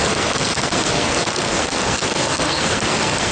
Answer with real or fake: fake